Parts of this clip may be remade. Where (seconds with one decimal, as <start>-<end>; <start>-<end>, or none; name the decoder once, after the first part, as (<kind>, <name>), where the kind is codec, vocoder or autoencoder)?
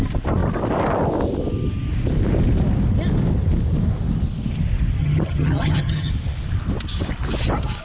5.0-6.1 (vocoder, HiFi-GAN)